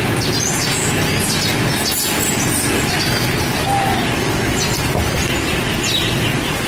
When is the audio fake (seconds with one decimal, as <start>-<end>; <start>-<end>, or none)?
none